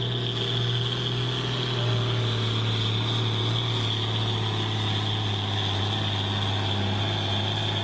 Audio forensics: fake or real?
real